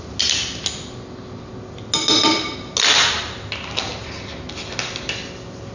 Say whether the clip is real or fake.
real